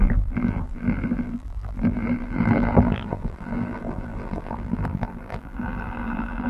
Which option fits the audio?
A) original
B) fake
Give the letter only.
B